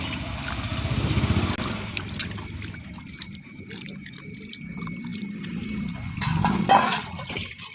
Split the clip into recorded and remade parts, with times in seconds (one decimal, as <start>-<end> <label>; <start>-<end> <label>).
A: 0.0-7.7 recorded

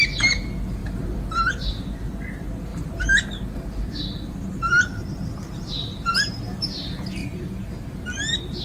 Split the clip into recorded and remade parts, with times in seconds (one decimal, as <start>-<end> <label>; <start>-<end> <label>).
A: 0.0-0.8 recorded; 0.8-1.7 remade; 1.7-2.7 recorded; 2.7-5.0 remade; 5.0-8.6 recorded

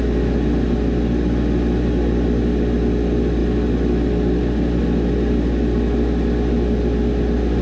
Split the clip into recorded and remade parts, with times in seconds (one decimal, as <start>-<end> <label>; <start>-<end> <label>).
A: 0.0-7.6 recorded

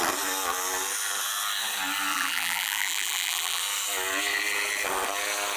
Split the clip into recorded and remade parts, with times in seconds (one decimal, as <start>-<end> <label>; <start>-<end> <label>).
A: 0.0-2.1 recorded; 2.1-3.6 remade; 3.6-5.6 recorded

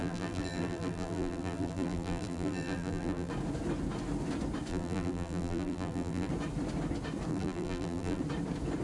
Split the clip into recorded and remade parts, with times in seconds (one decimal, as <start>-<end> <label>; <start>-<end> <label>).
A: 0.0-3.3 remade; 3.3-4.7 recorded; 4.7-6.3 remade; 6.3-7.3 recorded; 7.3-8.2 remade; 8.2-8.8 recorded

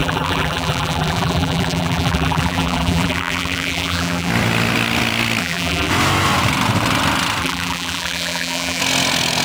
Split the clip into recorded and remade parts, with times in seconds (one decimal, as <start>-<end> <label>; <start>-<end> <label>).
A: 0.0-4.3 remade; 4.3-5.4 recorded; 5.4-5.9 remade; 5.9-7.4 recorded; 7.4-8.8 remade; 8.8-9.4 recorded

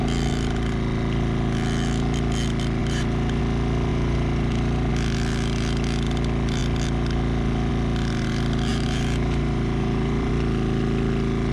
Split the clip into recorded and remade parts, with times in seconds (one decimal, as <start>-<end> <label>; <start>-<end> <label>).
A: 0.0-2.8 recorded; 2.8-3.4 remade; 3.4-3.9 recorded; 3.9-4.9 remade; 4.9-8.7 recorded; 8.7-10.3 remade; 10.3-11.5 recorded

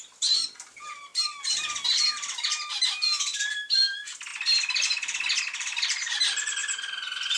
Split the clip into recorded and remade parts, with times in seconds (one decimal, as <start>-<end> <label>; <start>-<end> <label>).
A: 0.0-1.1 remade; 1.1-3.4 recorded; 3.4-4.3 remade; 4.3-5.4 recorded; 5.4-6.6 remade; 6.6-7.4 recorded